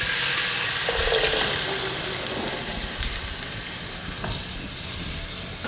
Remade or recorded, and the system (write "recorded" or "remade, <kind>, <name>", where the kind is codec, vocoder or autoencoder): recorded